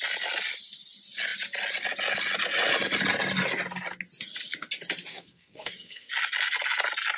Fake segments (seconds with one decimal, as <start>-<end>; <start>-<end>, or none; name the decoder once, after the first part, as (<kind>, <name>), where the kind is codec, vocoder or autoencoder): 5.1-6.1 (codec, SNAC)